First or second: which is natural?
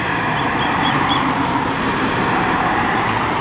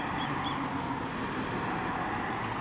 second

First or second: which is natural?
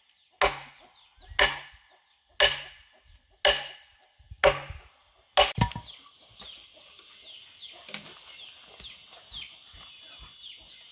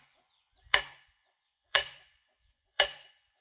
first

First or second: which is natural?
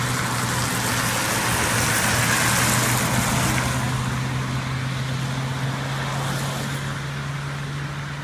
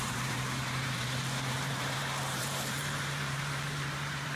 first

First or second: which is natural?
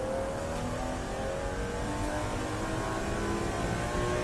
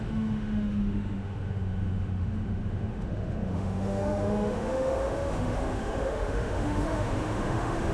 first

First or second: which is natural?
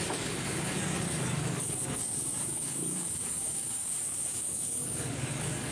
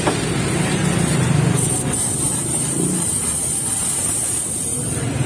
second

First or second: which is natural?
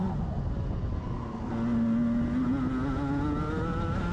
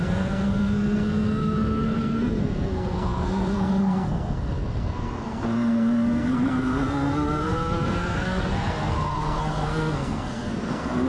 first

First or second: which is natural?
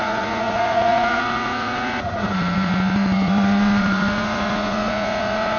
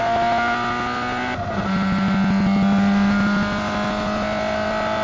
second